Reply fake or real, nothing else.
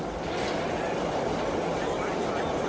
real